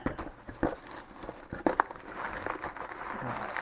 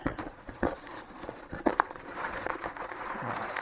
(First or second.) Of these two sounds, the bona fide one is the first